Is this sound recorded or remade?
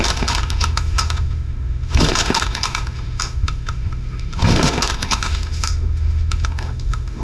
remade